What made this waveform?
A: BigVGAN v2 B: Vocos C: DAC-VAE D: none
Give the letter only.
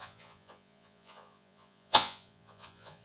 B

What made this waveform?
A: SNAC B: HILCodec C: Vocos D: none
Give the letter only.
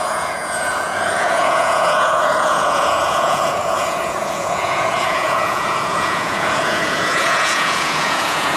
C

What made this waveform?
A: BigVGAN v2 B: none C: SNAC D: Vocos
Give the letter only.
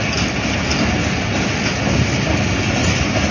B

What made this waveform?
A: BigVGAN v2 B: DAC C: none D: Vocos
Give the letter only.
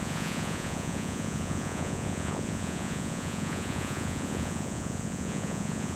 D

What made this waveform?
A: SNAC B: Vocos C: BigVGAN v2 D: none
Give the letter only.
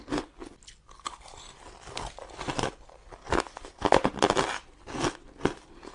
D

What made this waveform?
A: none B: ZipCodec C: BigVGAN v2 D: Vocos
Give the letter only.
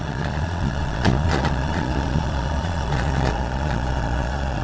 D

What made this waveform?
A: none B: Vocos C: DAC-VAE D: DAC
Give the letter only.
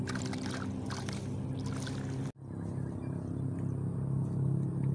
A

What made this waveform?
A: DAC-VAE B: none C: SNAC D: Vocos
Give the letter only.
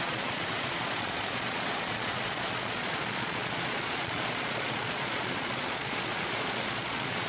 D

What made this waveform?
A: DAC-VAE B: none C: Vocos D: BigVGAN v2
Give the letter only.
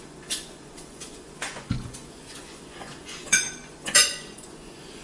C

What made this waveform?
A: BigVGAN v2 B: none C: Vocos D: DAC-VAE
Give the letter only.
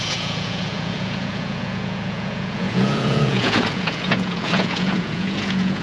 C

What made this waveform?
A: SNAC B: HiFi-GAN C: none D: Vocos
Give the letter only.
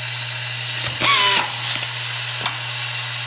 C